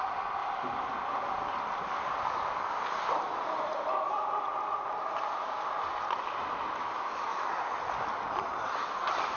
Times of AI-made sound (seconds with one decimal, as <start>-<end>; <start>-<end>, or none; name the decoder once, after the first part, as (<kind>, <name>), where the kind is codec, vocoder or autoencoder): 6.8-7.4 (autoencoder, DAC-VAE)